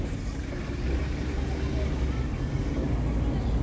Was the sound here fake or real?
real